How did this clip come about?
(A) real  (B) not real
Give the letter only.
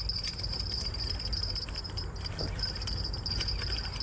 A